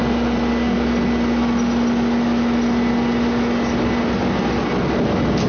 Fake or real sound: real